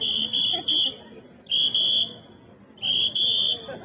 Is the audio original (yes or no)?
yes